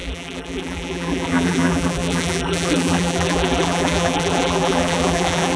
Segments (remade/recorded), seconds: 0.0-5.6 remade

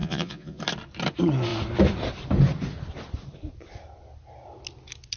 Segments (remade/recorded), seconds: 0.0-0.6 remade; 0.6-5.2 recorded

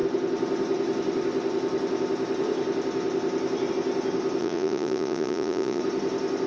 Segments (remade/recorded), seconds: 0.0-4.4 recorded; 4.4-5.8 remade; 5.8-6.5 recorded